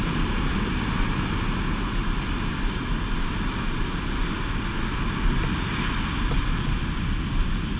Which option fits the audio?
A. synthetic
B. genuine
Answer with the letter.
B